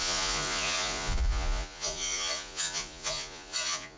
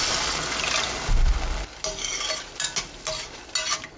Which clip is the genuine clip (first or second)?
second